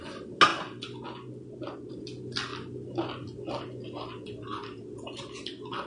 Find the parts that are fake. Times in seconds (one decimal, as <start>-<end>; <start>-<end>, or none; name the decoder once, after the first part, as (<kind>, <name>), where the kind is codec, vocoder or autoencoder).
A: none

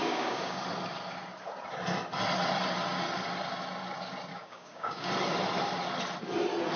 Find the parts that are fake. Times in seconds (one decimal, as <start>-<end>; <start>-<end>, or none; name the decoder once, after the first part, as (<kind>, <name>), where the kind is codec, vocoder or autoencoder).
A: 0.0-0.6 (codec, DAC); 4.3-5.1

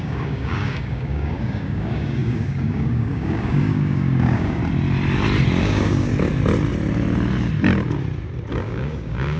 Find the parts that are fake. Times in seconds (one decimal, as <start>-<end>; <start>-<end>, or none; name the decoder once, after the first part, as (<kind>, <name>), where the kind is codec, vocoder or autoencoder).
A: 0.0-4.6 (codec, DAC); 5.6-6.1; 8.5-9.4

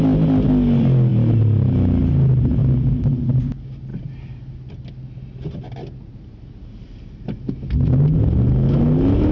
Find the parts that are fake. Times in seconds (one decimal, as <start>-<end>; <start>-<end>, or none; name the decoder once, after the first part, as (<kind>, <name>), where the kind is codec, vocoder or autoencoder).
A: none

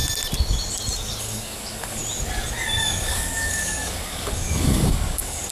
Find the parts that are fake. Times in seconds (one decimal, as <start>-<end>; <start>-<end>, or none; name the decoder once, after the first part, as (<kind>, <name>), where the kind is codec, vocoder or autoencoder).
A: 1.2-2.0 (codec, DAC); 2.8-5.5

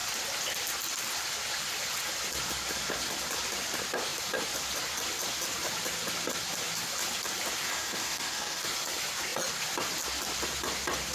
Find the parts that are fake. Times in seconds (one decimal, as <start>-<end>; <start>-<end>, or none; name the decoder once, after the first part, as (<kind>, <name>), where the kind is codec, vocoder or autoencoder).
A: 7.7-8.6 (codec, DAC)